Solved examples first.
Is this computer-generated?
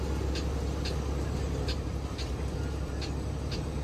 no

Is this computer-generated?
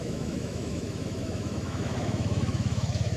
yes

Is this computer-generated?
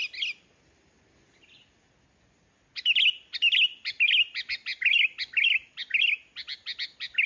no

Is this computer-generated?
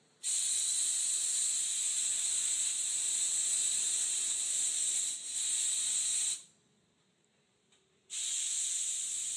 no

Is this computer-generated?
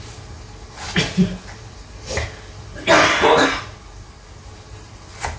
no